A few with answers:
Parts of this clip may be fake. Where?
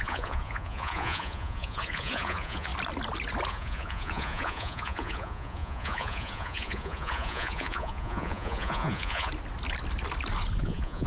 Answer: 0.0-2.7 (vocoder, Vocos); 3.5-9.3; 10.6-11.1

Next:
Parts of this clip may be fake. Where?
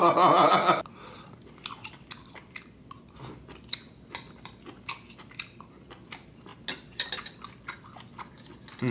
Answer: none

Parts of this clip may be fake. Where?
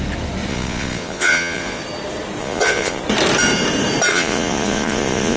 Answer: 0.5-1.8 (vocoder, Vocos); 2.4-3.0; 4.1-5.4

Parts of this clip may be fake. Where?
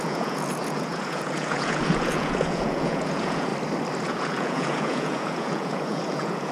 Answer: 0.0-3.5 (vocoder, Vocos); 4.0-6.5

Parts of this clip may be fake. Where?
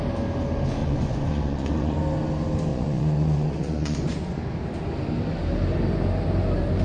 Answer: 0.8-2.0 (vocoder, Vocos); 2.7-4.4